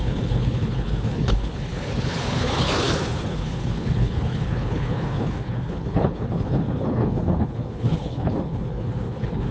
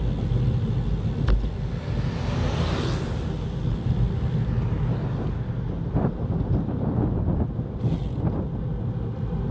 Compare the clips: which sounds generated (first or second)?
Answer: first